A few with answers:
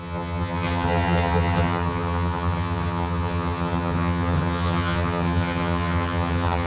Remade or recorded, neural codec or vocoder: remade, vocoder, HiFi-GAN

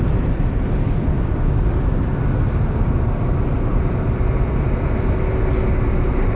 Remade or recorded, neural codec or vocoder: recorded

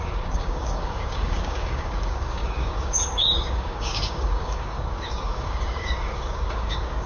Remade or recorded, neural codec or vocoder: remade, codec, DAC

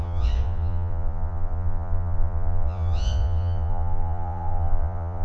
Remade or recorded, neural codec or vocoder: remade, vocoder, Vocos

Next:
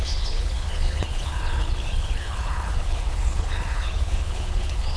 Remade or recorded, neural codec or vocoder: remade, codec, HILCodec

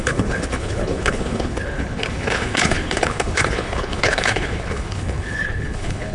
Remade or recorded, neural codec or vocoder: remade, codec, HILCodec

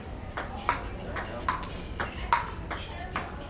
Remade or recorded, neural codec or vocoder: recorded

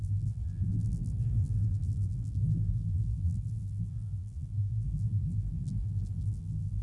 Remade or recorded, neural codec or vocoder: remade, vocoder, BigVGAN v2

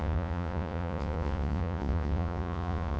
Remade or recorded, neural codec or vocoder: remade, vocoder, Vocos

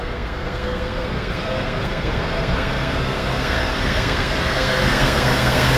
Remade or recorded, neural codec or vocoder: remade, codec, SNAC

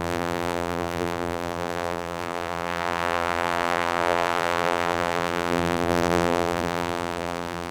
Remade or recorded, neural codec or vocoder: remade, vocoder, BigVGAN v2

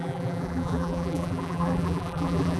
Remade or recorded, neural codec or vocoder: remade, vocoder, BigVGAN v2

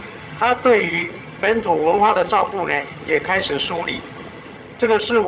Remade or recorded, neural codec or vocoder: remade, vocoder, HiFi-GAN